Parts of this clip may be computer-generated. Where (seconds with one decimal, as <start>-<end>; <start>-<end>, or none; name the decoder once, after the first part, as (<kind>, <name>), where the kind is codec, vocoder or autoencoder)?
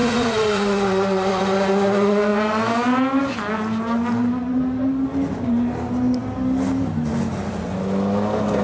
0.0-1.4 (vocoder, Vocos)